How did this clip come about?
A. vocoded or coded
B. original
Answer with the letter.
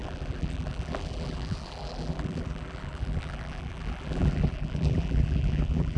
A